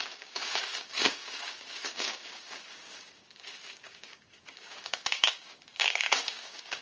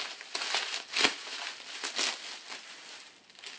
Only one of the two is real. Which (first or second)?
second